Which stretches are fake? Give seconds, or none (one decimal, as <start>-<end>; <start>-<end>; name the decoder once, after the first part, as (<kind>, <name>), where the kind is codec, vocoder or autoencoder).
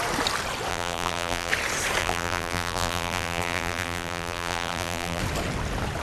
0.7-1.5 (vocoder, BigVGAN v2); 2.0-5.2